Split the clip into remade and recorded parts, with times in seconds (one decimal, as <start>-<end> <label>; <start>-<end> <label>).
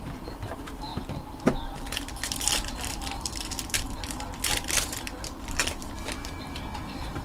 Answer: 0.0-7.2 remade